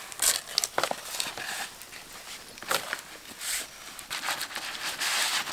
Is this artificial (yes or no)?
no